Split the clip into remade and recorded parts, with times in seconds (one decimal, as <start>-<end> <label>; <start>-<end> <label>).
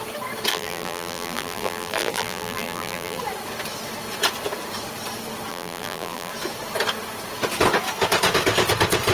0.0-0.5 recorded; 0.5-3.2 remade; 3.2-5.5 recorded; 5.5-6.3 remade; 6.3-9.1 recorded